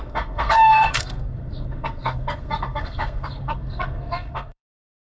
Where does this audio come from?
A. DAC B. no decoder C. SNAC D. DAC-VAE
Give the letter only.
C